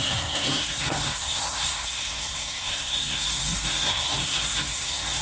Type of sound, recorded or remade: remade